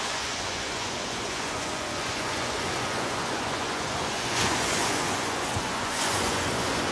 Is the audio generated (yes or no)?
yes